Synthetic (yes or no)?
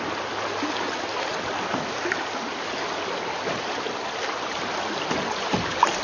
no